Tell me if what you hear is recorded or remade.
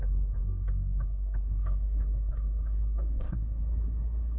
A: remade